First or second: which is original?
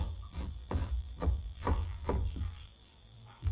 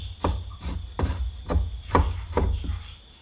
second